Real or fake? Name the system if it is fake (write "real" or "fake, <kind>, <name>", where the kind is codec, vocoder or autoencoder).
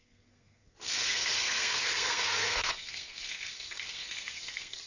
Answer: fake, codec, SNAC